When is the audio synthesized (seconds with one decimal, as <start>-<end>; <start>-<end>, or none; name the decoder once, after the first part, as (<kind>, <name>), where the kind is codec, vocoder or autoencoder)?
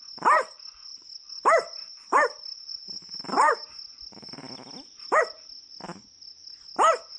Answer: none